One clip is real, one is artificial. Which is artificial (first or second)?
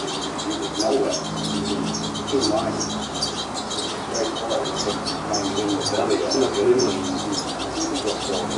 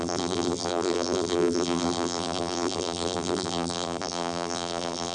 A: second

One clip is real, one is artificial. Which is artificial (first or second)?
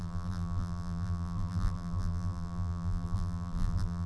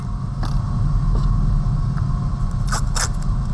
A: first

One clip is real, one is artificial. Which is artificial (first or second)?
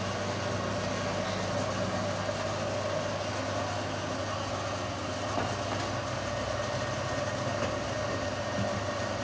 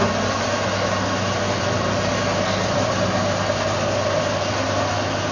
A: second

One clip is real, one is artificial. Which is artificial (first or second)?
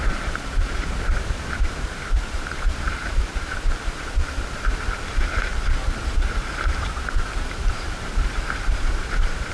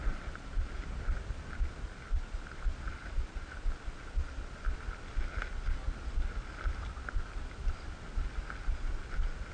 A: first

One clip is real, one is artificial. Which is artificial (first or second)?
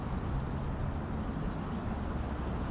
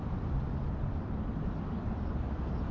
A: second